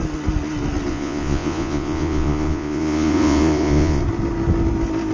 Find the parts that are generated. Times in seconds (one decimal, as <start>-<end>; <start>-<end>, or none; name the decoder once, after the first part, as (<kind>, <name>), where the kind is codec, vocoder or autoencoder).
0.9-4.0 (vocoder, Vocos)